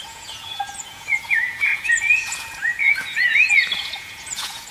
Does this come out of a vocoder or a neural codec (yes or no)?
yes